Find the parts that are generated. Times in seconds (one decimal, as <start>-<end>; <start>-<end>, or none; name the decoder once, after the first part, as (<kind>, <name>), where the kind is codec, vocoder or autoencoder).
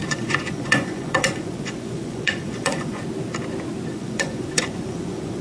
0.0-3.0 (vocoder, Vocos); 3.9-5.4